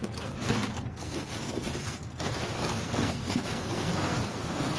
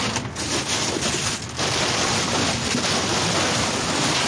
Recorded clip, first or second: second